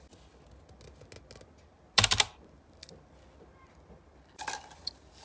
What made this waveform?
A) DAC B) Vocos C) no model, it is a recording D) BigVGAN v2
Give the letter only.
C